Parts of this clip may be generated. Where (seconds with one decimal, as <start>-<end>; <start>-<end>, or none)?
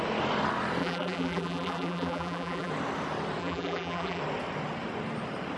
0.8-2.7; 3.4-4.2